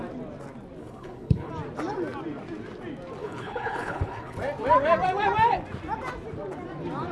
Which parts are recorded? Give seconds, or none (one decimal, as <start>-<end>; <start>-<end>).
0.0-0.8; 1.5-3.2; 4.4-7.1